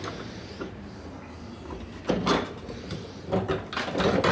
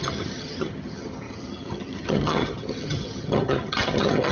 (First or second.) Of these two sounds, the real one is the first